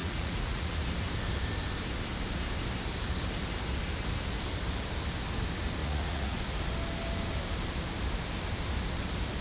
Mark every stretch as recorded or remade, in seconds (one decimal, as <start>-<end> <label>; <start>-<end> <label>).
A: 0.0-0.8 remade; 0.8-5.8 recorded; 5.8-6.4 remade; 6.4-9.4 recorded